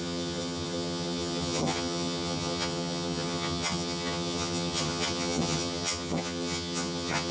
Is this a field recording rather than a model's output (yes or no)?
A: no